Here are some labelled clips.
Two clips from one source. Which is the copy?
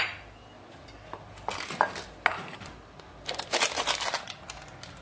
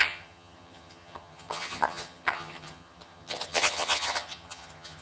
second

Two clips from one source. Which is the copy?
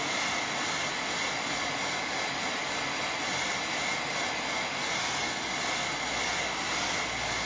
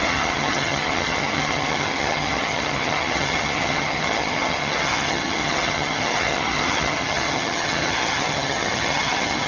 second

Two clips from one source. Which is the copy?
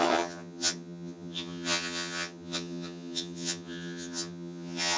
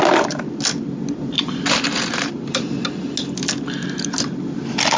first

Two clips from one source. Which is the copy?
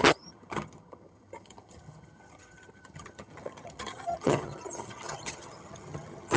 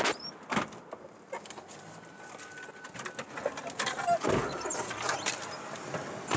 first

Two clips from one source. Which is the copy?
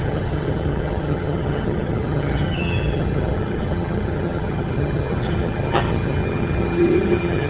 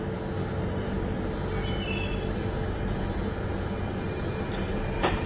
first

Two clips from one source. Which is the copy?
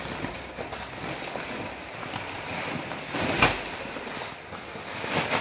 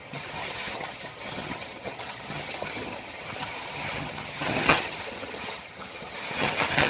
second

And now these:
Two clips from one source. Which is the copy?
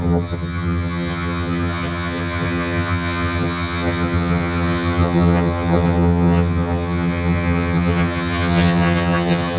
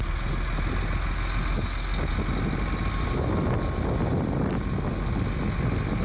first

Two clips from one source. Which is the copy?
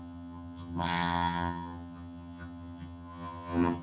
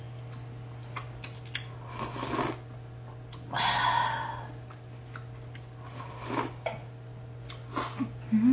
first